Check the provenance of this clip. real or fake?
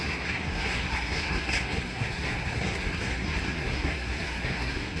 fake